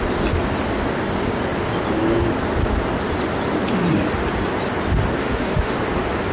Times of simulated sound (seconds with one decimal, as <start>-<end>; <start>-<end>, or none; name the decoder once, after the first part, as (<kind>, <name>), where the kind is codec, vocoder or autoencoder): 5.2-5.8 (autoencoder, DAC-VAE)